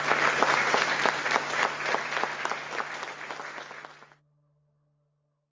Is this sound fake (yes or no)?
no